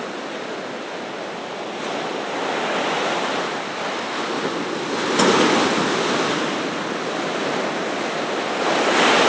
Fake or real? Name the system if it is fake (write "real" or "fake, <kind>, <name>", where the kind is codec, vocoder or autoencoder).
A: real